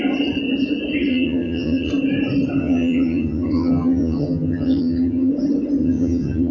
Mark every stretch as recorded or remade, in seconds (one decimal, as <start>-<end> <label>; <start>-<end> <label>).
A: 0.0-1.1 recorded; 1.1-1.9 remade; 1.9-2.6 recorded; 2.6-5.3 remade; 5.3-5.8 recorded; 5.8-6.5 remade